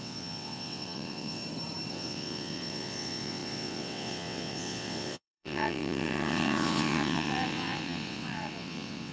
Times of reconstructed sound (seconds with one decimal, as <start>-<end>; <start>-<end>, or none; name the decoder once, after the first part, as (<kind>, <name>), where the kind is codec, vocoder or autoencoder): 0.0-1.4 (vocoder, WaveNeXt); 1.9-9.1